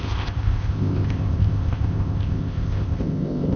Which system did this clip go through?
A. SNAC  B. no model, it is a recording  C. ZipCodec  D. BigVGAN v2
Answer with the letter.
C